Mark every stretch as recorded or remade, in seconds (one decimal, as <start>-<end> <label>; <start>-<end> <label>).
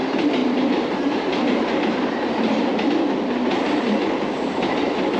0.0-0.4 recorded; 0.4-2.9 remade; 2.9-5.2 recorded